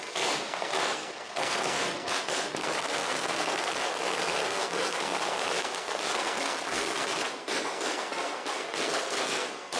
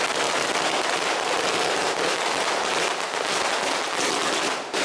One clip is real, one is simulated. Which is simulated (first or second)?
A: first